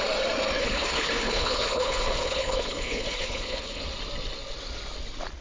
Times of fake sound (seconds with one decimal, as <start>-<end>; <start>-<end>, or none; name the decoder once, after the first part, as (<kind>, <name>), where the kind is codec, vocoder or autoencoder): 0.6-3.8 (codec, HILCodec)